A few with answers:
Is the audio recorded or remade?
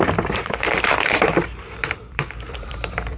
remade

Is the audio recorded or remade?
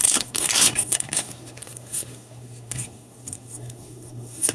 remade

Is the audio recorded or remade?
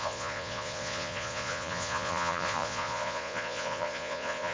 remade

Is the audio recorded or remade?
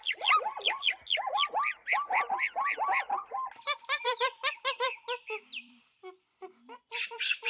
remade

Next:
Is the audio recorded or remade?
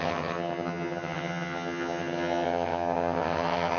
remade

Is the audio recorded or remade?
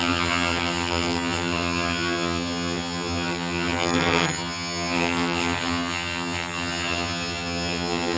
remade